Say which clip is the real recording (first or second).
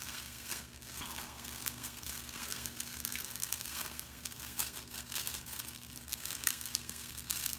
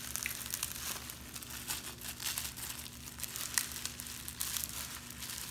second